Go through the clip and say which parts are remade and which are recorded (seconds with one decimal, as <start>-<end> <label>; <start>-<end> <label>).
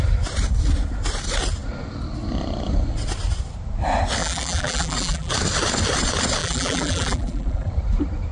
0.0-4.2 recorded; 4.2-5.3 remade; 5.3-6.4 recorded; 6.4-7.7 remade; 7.7-8.3 recorded